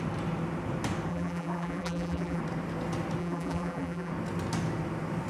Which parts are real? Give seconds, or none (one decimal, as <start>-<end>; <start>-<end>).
0.0-1.1; 2.4-3.2; 4.1-5.3